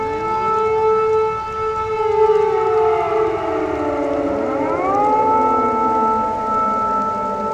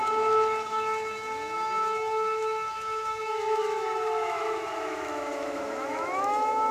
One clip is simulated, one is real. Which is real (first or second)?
first